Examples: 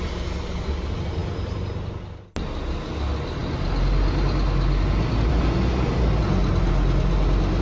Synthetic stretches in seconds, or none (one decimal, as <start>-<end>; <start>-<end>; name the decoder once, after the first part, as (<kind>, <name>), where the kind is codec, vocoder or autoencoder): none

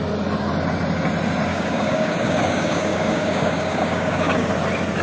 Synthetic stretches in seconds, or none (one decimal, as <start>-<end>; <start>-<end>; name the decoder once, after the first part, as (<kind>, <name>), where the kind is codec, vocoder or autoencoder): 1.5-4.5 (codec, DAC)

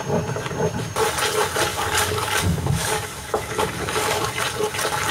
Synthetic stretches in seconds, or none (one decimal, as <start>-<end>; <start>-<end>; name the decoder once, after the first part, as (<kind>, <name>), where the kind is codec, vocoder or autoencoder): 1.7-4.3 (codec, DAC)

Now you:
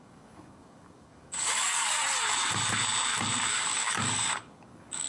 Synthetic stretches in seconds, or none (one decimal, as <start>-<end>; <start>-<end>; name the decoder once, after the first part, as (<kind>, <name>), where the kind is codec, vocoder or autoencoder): 0.0-2.0 (codec, DAC); 3.5-5.1

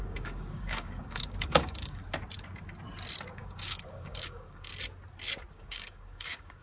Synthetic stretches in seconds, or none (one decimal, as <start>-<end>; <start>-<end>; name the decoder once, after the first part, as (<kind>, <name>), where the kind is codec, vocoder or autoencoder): 0.0-2.0 (codec, DAC); 3.3-4.7; 5.5-6.6

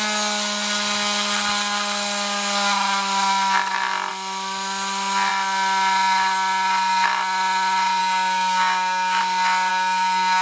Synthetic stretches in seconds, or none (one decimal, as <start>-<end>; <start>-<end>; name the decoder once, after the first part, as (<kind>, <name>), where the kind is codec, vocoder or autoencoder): 8.0-9.2 (codec, DAC); 9.7-10.4